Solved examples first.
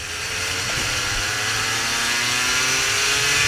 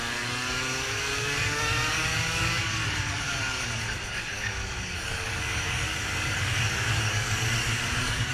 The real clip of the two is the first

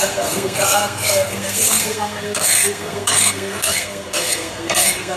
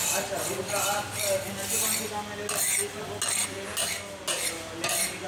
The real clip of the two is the second